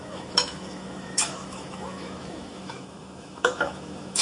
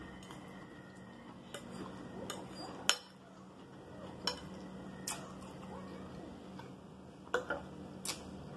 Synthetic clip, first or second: first